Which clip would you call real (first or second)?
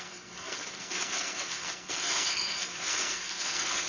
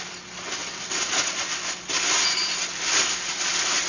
second